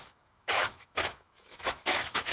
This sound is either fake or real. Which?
fake